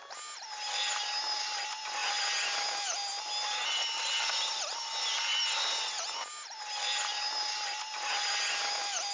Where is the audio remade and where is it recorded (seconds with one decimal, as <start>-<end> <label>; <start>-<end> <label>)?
0.0-9.1 recorded